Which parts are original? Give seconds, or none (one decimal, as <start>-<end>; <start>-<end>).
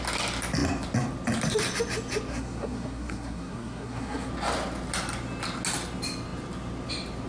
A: 0.0-2.3; 4.3-7.3